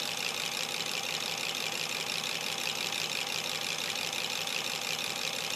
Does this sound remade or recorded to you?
recorded